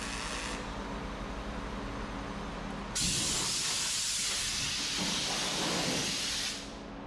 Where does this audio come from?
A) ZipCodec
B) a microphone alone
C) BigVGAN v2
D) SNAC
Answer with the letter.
B